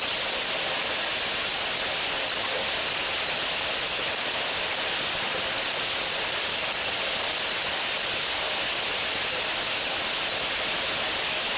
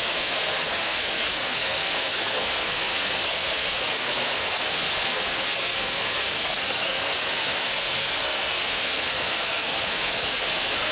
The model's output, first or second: second